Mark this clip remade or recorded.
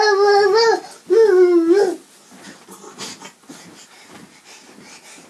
recorded